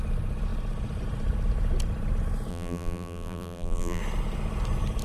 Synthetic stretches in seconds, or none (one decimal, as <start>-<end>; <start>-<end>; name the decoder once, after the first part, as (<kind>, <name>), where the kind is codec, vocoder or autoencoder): 2.5-4.0 (vocoder, BigVGAN v2)